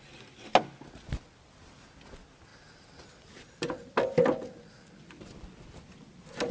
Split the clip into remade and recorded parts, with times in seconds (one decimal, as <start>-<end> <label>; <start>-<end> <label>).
0.0-6.5 recorded